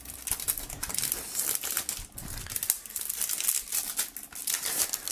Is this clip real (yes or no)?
yes